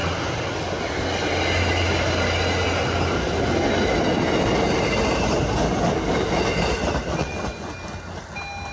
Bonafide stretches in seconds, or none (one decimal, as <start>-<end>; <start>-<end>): 0.0-7.2; 7.7-8.7